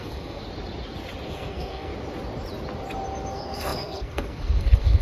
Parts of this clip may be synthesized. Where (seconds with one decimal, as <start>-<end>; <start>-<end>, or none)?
0.0-0.4; 1.3-1.9; 3.3-5.0